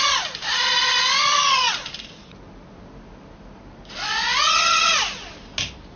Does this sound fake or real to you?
real